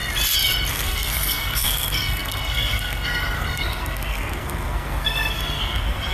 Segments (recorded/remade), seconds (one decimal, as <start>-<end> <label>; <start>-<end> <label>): 0.0-0.7 recorded; 0.7-6.1 remade